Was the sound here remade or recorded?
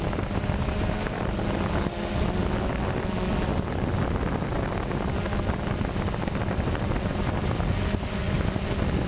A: recorded